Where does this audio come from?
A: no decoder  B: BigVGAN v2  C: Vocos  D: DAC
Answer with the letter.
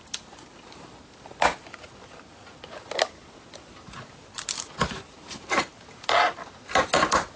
A